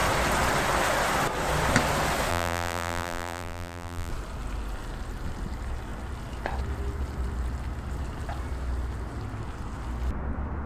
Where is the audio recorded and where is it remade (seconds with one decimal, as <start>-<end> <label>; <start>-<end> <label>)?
0.0-2.3 recorded; 2.3-4.1 remade; 4.1-10.7 recorded